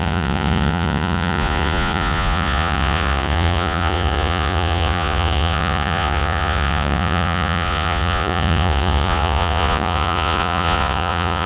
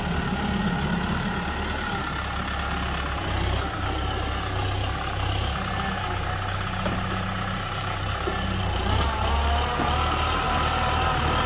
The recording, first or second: second